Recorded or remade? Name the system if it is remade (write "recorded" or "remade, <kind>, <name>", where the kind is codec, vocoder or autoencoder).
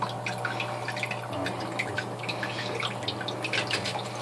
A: recorded